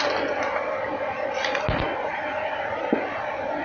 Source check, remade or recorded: recorded